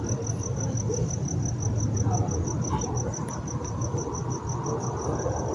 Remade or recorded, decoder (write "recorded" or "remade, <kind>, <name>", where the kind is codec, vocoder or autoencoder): recorded